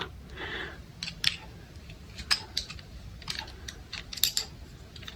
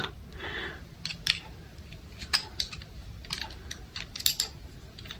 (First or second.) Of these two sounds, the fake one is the second